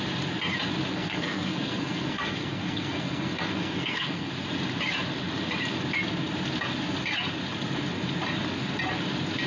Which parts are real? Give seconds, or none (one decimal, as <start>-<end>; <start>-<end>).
0.0-0.9; 4.3-9.5